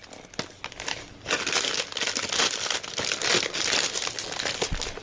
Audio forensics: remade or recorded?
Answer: recorded